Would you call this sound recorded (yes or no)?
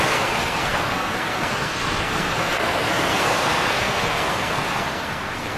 no